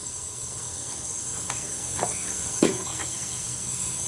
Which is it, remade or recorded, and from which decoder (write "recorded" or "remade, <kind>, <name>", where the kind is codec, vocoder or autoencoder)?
remade, codec, SNAC